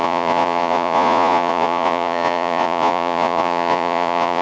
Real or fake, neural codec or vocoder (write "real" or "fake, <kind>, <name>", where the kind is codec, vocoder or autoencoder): fake, vocoder, Vocos